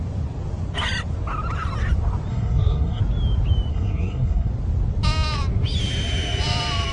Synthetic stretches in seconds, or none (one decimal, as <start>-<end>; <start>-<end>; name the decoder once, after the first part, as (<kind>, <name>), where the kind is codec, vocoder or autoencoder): 2.3-3.0 (codec, SNAC); 3.7-4.5